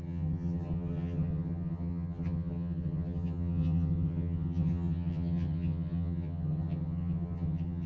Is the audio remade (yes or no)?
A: yes